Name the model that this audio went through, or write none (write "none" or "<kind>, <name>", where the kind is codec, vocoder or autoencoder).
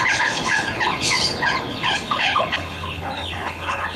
codec, HILCodec